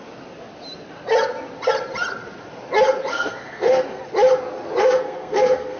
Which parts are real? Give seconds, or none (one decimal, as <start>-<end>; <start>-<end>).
0.0-3.1; 4.0-4.8